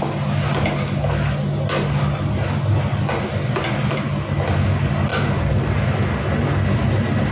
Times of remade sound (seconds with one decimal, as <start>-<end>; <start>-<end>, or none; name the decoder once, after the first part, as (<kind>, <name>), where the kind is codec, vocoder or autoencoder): none